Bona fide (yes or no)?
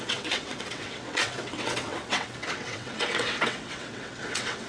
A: no